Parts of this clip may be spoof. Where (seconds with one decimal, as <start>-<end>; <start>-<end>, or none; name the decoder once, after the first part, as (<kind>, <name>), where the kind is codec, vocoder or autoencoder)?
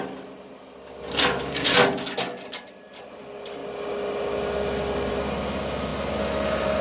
none